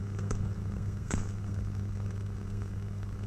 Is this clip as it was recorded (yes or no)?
no